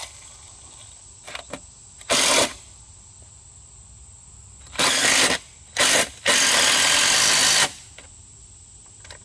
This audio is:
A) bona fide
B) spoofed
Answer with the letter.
B